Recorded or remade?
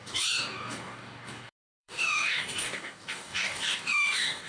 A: remade